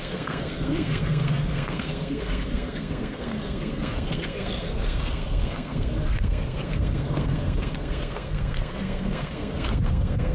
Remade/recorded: remade